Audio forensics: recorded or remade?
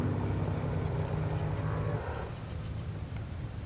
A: recorded